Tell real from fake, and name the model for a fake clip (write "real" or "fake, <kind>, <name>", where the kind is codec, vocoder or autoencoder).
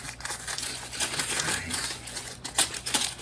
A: fake, vocoder, Vocos